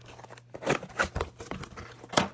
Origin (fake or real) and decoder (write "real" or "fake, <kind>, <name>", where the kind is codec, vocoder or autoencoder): real